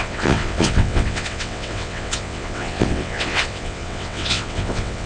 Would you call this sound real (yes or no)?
no